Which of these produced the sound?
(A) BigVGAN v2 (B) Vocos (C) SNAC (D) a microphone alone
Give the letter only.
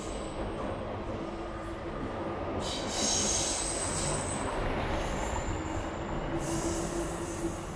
D